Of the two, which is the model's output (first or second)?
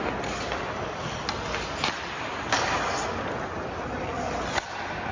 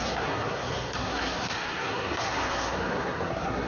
second